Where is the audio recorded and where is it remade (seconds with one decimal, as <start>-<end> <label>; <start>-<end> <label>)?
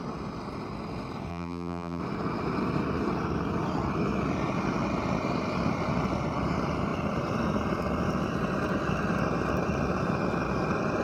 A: 0.0-1.3 recorded; 1.3-2.0 remade; 2.0-11.0 recorded